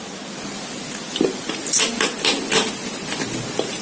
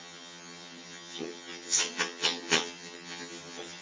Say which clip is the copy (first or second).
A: second